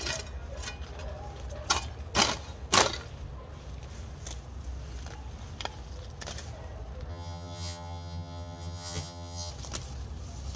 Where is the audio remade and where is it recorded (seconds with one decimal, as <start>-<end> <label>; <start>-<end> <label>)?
0.0-7.1 recorded; 7.1-9.5 remade; 9.5-10.6 recorded